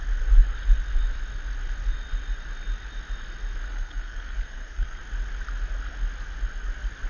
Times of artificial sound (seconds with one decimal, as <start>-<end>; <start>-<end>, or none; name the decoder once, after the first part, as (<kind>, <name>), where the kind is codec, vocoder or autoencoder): 3.7-5.0 (codec, SNAC)